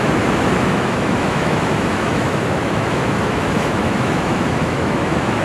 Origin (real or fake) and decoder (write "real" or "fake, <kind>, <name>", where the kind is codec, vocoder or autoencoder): fake, autoencoder, DAC-VAE